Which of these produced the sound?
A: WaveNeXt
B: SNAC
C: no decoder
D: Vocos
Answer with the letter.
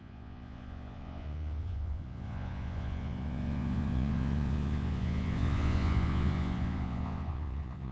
D